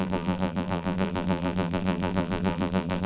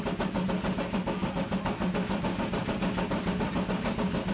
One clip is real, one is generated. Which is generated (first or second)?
first